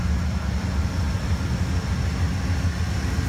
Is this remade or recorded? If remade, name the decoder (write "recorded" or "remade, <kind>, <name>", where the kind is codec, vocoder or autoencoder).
recorded